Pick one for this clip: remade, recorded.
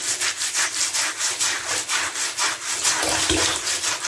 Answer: recorded